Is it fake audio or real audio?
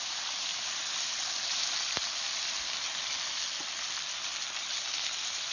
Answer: real